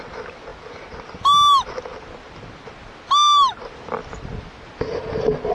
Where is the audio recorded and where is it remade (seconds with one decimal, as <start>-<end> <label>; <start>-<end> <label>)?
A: 0.0-5.5 recorded